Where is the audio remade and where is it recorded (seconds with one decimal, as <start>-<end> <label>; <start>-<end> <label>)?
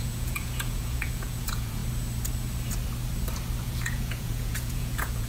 0.0-1.8 remade; 1.8-3.6 recorded; 3.6-5.3 remade